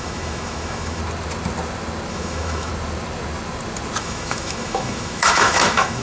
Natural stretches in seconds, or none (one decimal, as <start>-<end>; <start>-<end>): 1.0-2.1; 2.7-4.0